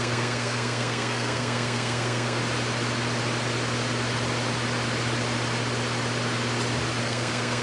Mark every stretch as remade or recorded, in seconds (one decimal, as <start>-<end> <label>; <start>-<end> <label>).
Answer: 0.0-2.4 remade; 2.4-7.0 recorded; 7.0-7.6 remade

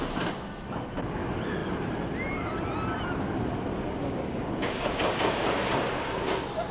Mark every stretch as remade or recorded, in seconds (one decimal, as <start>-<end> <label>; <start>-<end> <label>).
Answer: 0.0-4.0 recorded; 4.0-5.5 remade; 5.5-6.7 recorded

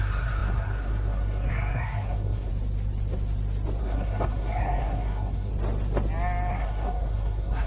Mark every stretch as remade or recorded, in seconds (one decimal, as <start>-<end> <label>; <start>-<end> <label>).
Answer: 0.0-2.5 remade; 2.5-3.8 recorded; 3.8-5.5 remade; 5.5-6.5 recorded; 6.5-7.7 remade

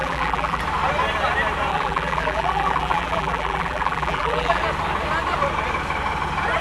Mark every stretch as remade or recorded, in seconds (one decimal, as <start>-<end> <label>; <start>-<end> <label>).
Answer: 0.0-0.6 remade; 0.6-1.7 recorded; 1.7-4.6 remade; 4.6-6.6 recorded

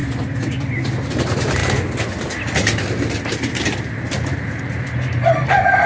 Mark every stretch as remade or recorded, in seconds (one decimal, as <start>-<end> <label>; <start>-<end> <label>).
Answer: 0.0-1.6 remade; 1.6-5.1 recorded; 5.1-5.9 remade

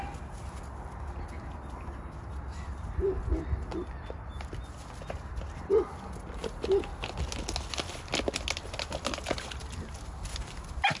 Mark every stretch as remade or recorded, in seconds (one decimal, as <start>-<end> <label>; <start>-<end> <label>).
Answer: 0.0-11.0 recorded

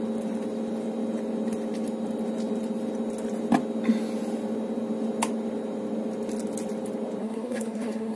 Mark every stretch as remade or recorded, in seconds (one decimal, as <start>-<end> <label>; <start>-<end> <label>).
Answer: 0.0-7.2 recorded; 7.2-8.2 remade